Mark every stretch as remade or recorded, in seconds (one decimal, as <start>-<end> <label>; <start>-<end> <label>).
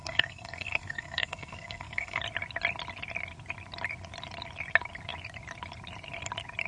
0.0-2.2 remade; 2.2-6.7 recorded